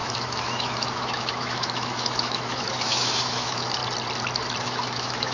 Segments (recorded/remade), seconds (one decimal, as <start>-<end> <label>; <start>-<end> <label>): 0.0-3.8 remade; 3.8-4.6 recorded; 4.6-5.3 remade